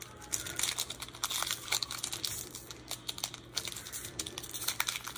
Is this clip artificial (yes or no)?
no